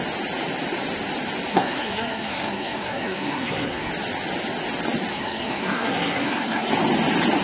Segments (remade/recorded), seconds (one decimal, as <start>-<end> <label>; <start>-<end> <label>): 0.0-1.5 recorded; 1.5-3.9 remade; 3.9-5.1 recorded; 5.1-6.7 remade; 6.7-7.4 recorded